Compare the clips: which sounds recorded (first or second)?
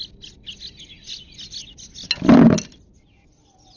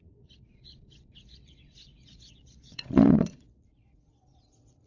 first